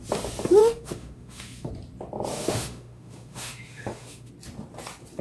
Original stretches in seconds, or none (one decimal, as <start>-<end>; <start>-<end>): 0.0-0.6; 1.7-2.3; 4.3-5.2